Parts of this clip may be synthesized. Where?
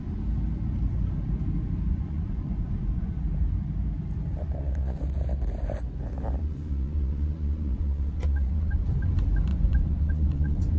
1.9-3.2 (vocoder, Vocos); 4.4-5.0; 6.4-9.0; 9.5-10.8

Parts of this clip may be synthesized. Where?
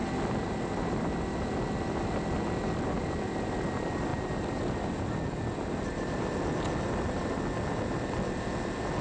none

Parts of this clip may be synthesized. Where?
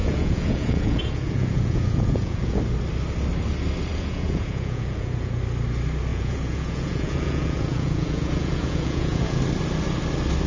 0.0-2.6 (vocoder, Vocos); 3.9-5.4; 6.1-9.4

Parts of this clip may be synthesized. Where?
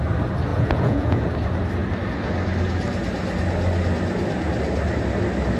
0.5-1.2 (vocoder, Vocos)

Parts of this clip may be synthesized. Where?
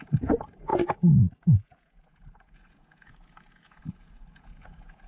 0.0-5.1 (vocoder, Vocos)